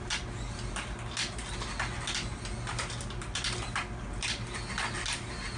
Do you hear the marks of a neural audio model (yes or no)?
no